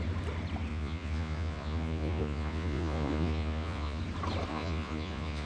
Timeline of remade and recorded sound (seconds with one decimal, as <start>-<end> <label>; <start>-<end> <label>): 0.0-0.7 recorded; 0.7-4.0 remade; 4.0-4.5 recorded; 4.5-5.5 remade